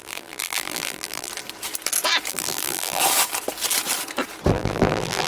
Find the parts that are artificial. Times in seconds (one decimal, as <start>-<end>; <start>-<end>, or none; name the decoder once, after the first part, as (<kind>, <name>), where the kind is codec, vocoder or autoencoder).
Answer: 0.0-1.3 (vocoder, BigVGAN v2); 2.3-3.0; 4.5-5.3